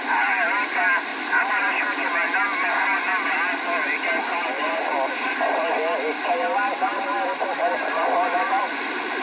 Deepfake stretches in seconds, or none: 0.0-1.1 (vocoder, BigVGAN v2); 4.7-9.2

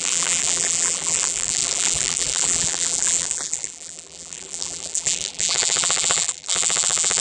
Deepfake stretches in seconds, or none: 0.0-7.2 (vocoder, BigVGAN v2)